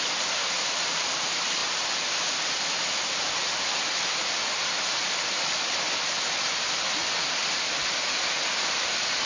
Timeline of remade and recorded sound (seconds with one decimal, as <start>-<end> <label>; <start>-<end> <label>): 0.0-9.3 recorded